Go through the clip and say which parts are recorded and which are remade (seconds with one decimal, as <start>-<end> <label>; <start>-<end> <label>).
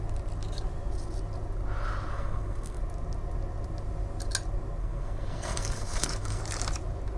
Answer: 0.0-2.1 recorded; 2.1-2.8 remade; 2.8-4.8 recorded; 4.8-6.4 remade; 6.4-7.2 recorded